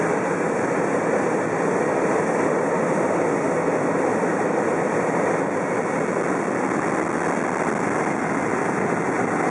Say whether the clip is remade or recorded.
recorded